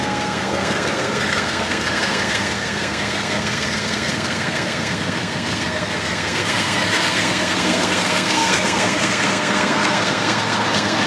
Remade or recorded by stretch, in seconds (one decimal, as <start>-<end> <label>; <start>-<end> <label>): 0.0-11.1 remade